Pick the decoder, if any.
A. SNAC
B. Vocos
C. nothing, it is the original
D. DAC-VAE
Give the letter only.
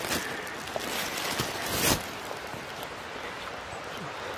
C